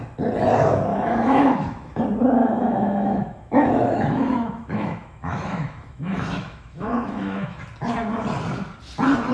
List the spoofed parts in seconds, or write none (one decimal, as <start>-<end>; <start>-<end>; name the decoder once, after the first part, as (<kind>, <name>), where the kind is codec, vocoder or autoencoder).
0.9-2.0 (autoencoder, DAC-VAE); 2.4-7.6